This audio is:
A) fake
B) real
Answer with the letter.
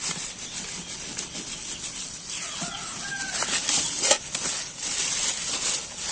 B